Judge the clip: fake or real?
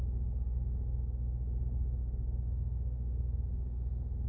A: fake